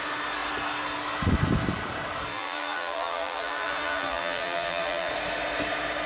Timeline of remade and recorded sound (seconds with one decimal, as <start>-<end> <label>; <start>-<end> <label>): 0.0-2.3 recorded; 2.3-5.1 remade; 5.1-6.1 recorded